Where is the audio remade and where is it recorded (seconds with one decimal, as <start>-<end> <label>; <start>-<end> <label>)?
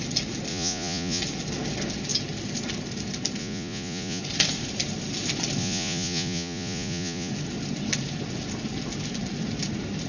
0.0-0.5 recorded; 0.5-1.2 remade; 1.2-3.4 recorded; 3.4-4.2 remade; 4.2-5.6 recorded; 5.6-7.3 remade; 7.3-10.1 recorded